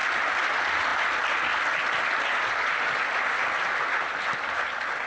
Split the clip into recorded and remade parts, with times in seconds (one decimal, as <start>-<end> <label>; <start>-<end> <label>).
0.0-5.1 recorded